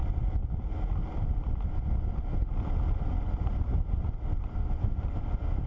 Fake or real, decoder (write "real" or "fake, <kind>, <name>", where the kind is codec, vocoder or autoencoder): real